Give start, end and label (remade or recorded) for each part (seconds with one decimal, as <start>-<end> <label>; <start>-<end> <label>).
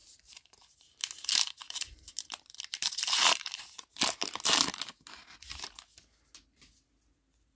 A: 0.0-4.0 remade; 4.0-7.5 recorded